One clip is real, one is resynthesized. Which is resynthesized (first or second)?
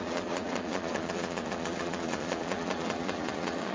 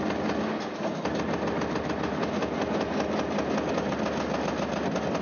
first